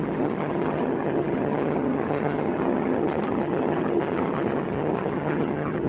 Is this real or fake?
fake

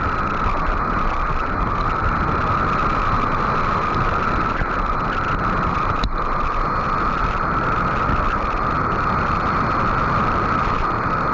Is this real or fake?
real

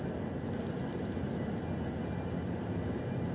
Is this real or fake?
real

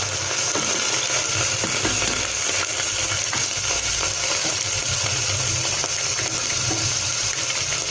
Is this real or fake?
real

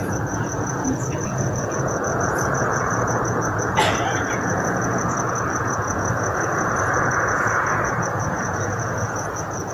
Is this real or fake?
fake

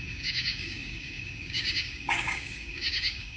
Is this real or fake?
fake